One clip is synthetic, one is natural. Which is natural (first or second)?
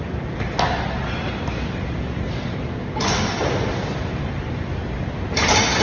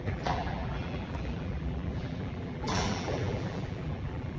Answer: first